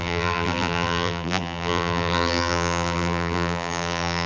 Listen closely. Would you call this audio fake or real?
fake